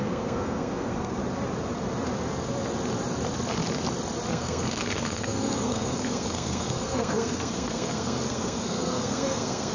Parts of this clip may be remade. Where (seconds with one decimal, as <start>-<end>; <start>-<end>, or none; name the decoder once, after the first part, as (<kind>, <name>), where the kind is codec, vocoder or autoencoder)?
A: 0.0-1.2 (codec, SNAC); 4.3-9.7